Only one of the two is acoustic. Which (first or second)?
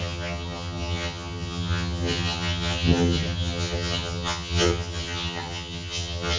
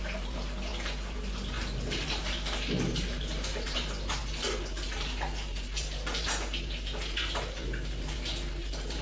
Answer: second